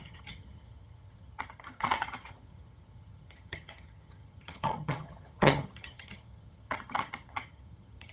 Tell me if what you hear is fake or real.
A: fake